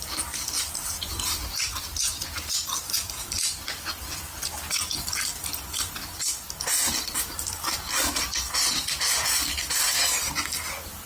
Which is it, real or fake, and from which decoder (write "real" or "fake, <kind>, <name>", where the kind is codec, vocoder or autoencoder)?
real